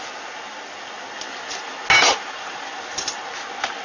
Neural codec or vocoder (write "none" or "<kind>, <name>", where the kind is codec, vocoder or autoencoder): none